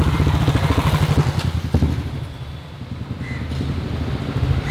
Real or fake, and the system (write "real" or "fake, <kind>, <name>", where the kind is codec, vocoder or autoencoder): real